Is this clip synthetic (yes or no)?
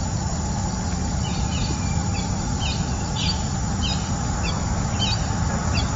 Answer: yes